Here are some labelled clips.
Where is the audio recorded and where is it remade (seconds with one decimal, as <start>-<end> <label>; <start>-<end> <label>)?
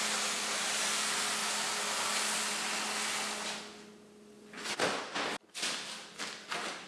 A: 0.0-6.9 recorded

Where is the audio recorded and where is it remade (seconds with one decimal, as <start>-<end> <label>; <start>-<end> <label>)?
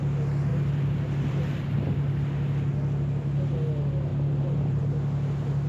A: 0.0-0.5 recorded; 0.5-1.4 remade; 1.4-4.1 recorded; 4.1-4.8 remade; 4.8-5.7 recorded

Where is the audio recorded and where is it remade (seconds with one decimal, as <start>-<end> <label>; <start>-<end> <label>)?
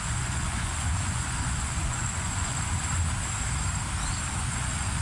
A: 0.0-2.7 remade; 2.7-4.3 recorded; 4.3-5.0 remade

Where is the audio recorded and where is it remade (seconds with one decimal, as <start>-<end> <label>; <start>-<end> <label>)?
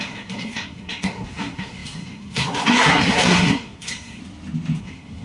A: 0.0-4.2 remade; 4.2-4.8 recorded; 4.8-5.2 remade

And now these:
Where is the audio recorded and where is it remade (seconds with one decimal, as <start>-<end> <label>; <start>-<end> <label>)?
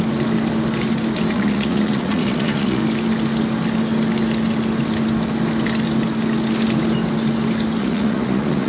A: 0.0-1.3 recorded; 1.3-2.8 remade; 2.8-7.8 recorded; 7.8-8.7 remade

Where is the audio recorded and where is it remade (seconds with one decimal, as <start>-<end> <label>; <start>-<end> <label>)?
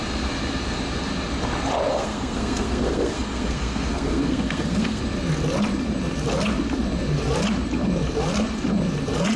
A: 0.0-1.9 recorded; 1.9-5.0 remade; 5.0-9.4 recorded